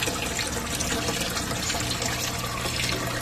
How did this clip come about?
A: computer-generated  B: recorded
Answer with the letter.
B